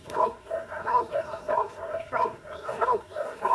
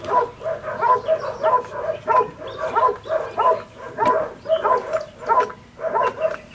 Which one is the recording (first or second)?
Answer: second